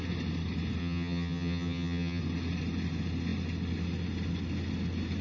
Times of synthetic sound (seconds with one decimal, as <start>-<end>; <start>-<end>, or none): 0.8-2.2